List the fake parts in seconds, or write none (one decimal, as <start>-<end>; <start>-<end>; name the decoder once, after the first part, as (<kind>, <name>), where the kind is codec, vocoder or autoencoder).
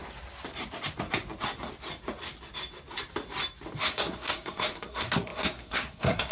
3.8-6.3 (codec, SNAC)